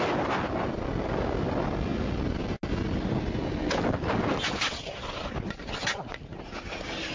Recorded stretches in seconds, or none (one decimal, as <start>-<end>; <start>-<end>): 0.0-7.1